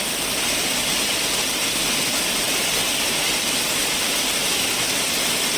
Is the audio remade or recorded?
recorded